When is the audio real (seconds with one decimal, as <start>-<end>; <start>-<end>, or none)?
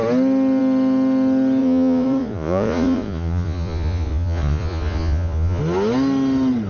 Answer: 0.0-1.6; 5.6-6.7